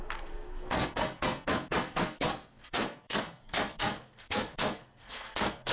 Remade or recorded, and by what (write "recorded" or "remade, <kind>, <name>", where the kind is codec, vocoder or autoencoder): remade, codec, SNAC